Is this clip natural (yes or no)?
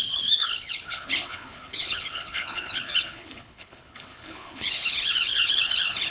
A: no